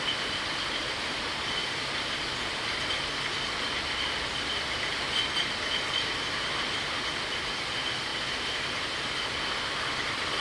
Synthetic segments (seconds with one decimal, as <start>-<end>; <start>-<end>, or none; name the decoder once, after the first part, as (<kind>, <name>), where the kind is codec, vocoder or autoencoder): none